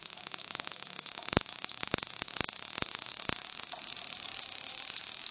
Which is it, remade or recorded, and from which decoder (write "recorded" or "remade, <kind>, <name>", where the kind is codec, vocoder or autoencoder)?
remade, autoencoder, DAC-VAE